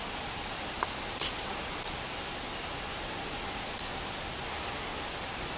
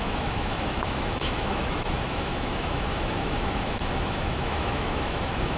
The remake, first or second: second